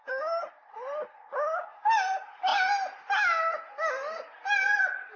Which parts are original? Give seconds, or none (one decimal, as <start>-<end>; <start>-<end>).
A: 0.0-5.2

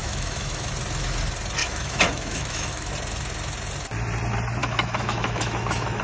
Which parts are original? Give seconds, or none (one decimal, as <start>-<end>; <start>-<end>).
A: 0.7-1.6; 2.9-4.6

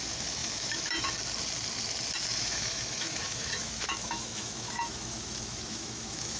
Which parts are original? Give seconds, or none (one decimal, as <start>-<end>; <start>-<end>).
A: 0.0-0.4; 1.1-2.3

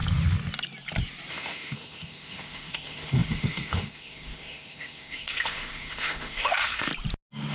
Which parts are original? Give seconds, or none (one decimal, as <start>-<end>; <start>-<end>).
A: 0.0-1.3; 6.9-7.5

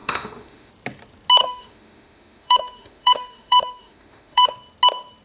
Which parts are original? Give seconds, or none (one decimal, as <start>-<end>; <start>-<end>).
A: 0.7-1.4; 4.5-5.2

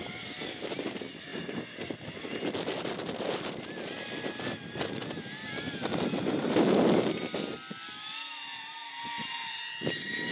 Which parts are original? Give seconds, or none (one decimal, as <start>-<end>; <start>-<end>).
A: 0.0-10.3

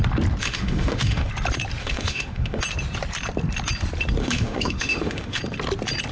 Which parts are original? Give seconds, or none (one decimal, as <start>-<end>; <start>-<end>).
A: 0.0-0.4; 1.3-1.8; 2.6-4.2; 5.4-6.1

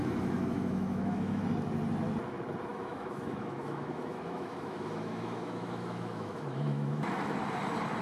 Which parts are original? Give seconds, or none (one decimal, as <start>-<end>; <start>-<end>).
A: 1.4-2.7; 7.3-8.0